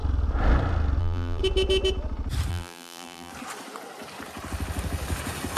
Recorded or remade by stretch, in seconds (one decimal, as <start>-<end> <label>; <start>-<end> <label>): 0.0-1.0 recorded; 1.0-1.4 remade; 1.4-2.5 recorded; 2.5-3.3 remade; 3.3-5.6 recorded